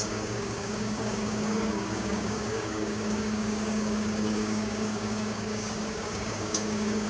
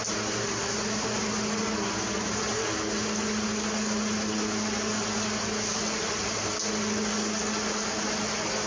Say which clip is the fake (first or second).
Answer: first